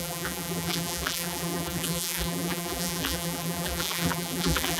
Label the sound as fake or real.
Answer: fake